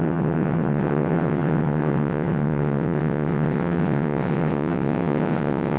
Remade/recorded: remade